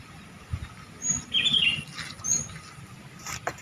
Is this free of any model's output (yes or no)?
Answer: yes